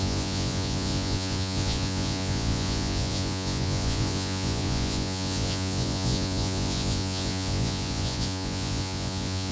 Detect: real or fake fake